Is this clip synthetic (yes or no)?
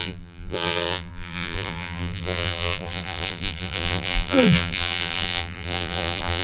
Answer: yes